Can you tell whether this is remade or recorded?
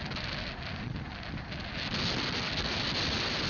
recorded